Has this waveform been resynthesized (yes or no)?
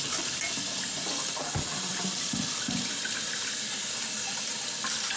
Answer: no